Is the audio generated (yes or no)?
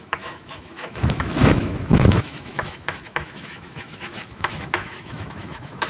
yes